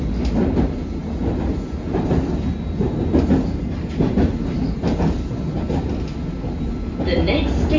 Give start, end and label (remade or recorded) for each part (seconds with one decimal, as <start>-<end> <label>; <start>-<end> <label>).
0.0-7.8 recorded